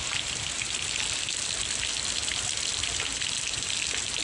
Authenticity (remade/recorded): recorded